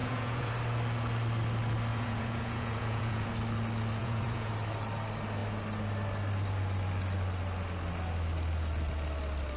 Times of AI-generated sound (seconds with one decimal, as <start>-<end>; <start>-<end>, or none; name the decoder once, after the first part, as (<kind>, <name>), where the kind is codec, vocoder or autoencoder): 0.0-0.5 (vocoder, Vocos); 1.9-3.3; 4.0-4.5